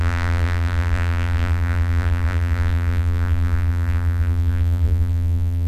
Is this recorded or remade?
remade